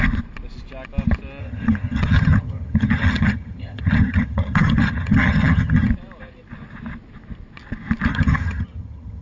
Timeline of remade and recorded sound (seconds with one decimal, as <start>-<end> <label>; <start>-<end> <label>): 0.0-1.4 recorded; 1.4-5.9 remade; 5.9-8.1 recorded; 8.1-9.2 remade

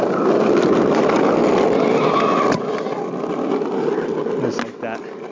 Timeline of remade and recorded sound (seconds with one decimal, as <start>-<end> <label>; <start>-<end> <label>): 0.0-5.3 recorded

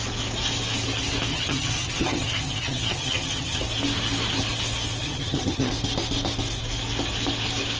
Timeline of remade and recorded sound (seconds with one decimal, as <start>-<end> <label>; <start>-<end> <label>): 0.0-1.3 recorded; 1.3-3.6 remade; 3.6-5.0 recorded; 5.0-5.7 remade; 5.7-7.8 recorded

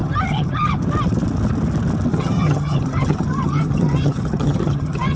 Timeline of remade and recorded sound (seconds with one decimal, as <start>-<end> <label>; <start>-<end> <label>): 0.0-0.8 remade; 0.8-2.1 recorded; 2.1-5.2 remade

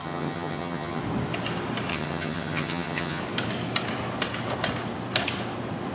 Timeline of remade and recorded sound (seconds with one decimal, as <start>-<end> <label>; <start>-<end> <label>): 0.0-1.0 remade; 1.0-1.9 recorded; 1.9-3.2 remade; 3.2-5.9 recorded